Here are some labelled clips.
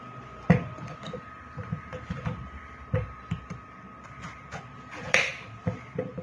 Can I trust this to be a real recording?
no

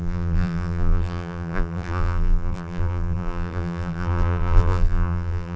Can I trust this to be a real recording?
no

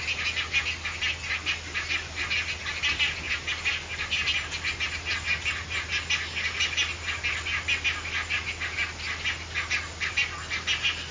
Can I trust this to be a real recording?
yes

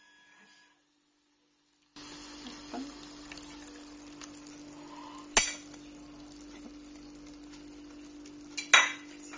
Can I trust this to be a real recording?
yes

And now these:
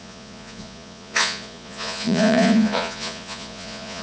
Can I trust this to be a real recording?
no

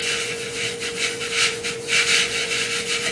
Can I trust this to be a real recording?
no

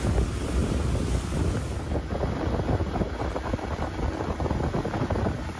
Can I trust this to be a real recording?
yes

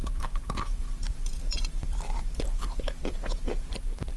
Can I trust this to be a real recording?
no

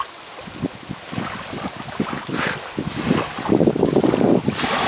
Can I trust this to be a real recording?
yes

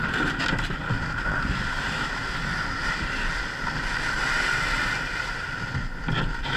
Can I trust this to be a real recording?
yes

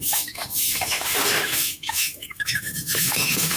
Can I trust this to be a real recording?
no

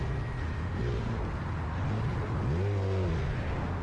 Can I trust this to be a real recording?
yes